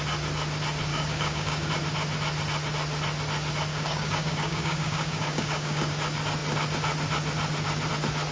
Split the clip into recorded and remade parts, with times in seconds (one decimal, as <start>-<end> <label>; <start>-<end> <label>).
0.0-0.9 recorded; 0.9-1.7 remade; 1.7-3.7 recorded; 3.7-5.9 remade; 5.9-8.3 recorded